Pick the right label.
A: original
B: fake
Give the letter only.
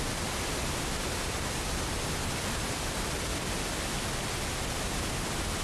A